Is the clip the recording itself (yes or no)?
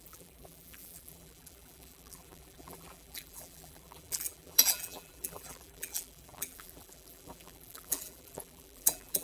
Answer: no